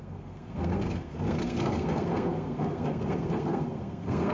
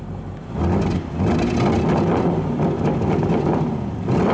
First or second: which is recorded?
second